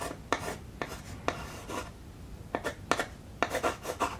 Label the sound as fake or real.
real